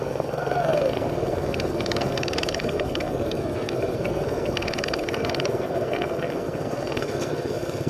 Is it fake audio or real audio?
fake